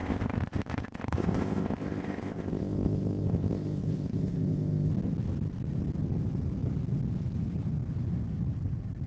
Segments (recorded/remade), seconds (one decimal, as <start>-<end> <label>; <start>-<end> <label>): 0.0-4.9 remade; 4.9-9.1 recorded